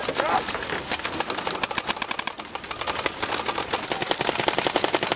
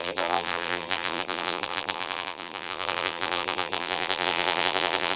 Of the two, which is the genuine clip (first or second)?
first